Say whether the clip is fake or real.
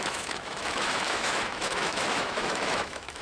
fake